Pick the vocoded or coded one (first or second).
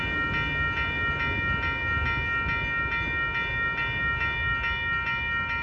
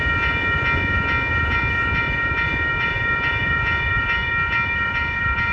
second